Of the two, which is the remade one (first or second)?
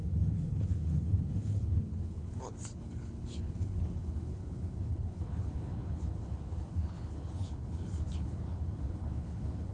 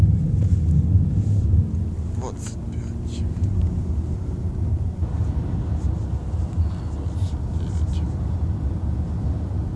first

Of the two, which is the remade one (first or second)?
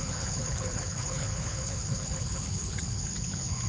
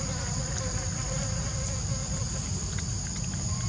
first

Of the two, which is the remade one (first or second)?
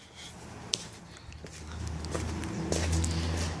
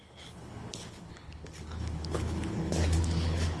second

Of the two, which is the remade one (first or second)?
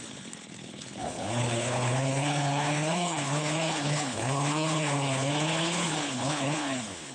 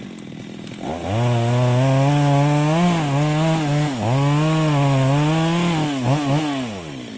first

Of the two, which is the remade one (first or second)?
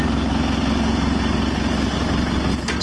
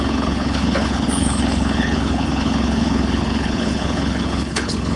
second